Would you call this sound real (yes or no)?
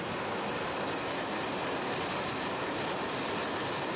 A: yes